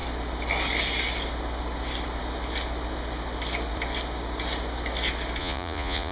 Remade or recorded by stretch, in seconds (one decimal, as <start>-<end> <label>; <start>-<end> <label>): 0.0-5.4 recorded; 5.4-6.1 remade